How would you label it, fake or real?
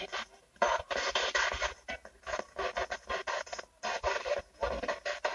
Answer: fake